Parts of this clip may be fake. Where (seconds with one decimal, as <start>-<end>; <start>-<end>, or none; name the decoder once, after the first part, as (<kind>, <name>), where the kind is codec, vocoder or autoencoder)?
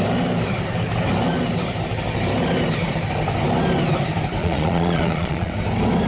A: 4.4-5.5 (vocoder, Vocos)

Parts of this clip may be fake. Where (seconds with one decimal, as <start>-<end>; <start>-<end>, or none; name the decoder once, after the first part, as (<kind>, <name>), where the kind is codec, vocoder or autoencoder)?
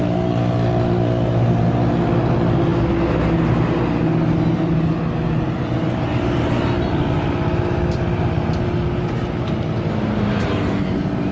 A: none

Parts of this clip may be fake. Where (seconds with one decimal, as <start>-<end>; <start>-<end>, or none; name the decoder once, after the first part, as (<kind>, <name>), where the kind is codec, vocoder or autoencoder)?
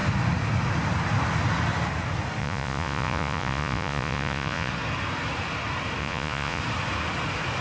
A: 2.4-4.7 (vocoder, Vocos); 6.0-6.6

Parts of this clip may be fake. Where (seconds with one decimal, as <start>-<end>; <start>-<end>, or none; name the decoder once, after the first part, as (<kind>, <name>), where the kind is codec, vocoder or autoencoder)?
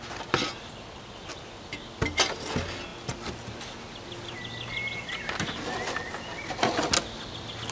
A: none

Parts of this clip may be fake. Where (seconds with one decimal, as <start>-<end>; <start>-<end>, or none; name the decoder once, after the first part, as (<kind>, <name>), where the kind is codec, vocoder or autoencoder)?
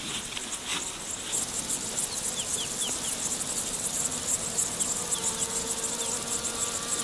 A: none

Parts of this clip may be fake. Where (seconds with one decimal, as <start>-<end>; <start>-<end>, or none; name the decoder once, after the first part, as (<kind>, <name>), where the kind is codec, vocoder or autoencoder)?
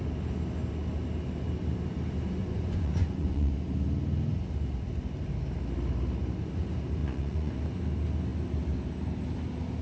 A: 2.4-3.5 (vocoder, Vocos); 7.0-7.6